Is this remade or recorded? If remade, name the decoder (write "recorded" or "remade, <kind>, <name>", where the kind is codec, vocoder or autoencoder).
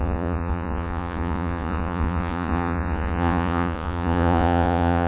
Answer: remade, vocoder, Vocos